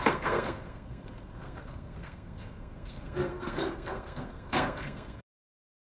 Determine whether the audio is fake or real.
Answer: fake